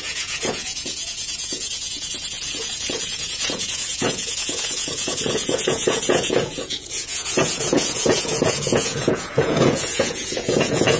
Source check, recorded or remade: remade